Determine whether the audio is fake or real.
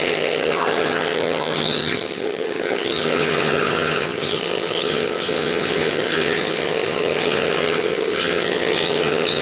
fake